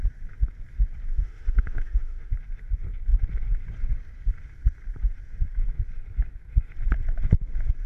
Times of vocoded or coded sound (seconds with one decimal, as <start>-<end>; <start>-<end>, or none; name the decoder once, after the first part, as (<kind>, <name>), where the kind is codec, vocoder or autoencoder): 1.1-2.3 (autoencoder, DAC-VAE)

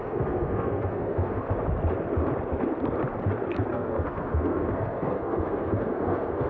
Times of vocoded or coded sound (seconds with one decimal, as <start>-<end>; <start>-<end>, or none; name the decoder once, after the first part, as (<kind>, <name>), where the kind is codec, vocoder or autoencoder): 0.0-1.4 (codec, SNAC); 3.7-6.5

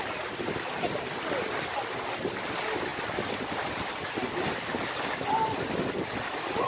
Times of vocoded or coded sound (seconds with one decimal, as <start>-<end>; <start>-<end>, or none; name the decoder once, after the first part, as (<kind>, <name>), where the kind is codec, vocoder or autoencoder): none

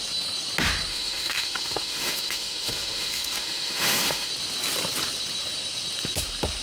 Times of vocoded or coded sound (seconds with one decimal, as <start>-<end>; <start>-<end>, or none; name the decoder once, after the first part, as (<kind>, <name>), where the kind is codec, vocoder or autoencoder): 0.9-4.3 (autoencoder, DAC-VAE)

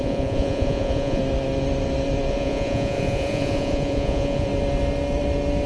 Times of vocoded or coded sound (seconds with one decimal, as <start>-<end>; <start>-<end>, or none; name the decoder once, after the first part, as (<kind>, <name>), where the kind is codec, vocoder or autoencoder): 0.0-1.2 (vocoder, Vocos); 2.3-4.5

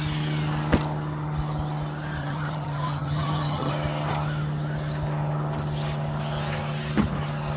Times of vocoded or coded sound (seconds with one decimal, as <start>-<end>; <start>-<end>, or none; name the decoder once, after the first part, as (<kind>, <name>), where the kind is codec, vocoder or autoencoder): 2.2-3.7 (vocoder, HiFi-GAN)

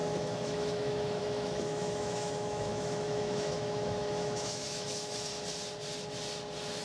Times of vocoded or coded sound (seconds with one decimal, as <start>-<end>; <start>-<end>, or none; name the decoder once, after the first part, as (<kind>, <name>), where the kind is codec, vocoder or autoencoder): 0.0-5.3 (autoencoder, DAC-VAE)